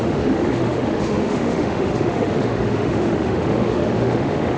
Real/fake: fake